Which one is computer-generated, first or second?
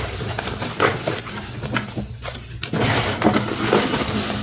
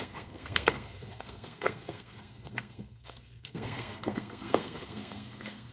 second